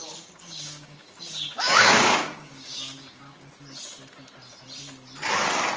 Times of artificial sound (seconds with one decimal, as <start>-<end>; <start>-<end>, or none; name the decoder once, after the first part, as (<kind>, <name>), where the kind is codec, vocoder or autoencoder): 0.0-3.5 (codec, DAC)